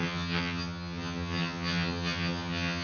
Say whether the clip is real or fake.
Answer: fake